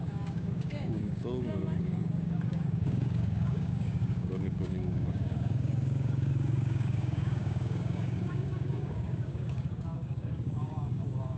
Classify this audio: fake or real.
fake